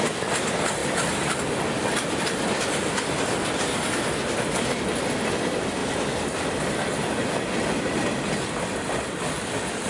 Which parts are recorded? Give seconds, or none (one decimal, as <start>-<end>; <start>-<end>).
0.0-9.9